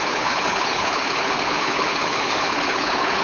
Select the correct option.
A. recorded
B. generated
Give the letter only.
B